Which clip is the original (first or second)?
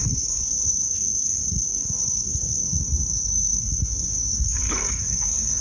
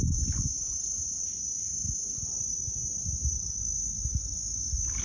second